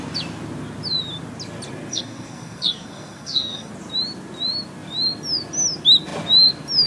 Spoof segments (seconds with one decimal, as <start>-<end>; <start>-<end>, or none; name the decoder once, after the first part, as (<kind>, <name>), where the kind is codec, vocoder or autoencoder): 1.9-3.7 (codec, SNAC)